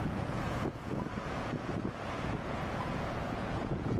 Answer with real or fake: fake